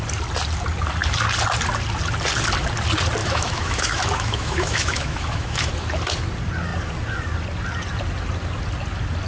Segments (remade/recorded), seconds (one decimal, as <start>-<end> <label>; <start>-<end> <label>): 0.0-3.2 recorded; 3.2-5.7 remade; 5.7-9.3 recorded